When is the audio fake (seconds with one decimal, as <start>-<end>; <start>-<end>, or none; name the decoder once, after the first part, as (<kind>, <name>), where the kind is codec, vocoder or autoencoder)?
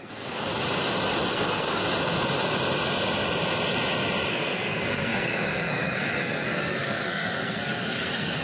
0.0-0.5 (codec, SNAC); 1.3-1.8; 4.3-8.4